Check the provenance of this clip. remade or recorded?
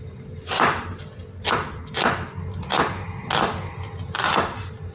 recorded